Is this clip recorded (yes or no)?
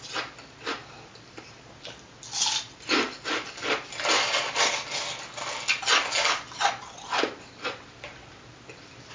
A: yes